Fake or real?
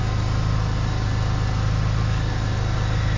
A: real